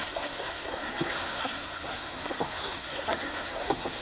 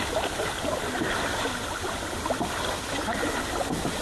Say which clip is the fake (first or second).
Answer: first